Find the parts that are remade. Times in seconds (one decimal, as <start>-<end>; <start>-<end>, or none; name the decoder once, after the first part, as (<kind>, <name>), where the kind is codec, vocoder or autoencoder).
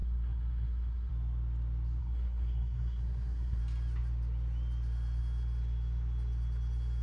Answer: 0.0-1.1 (codec, SNAC); 2.0-3.6